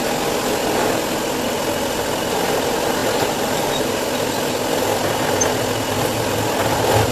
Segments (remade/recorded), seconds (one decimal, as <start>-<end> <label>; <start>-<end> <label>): 0.0-3.0 recorded; 3.0-4.1 remade; 4.1-7.1 recorded